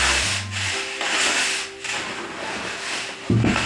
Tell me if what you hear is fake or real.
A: real